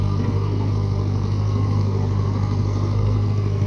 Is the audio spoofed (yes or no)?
yes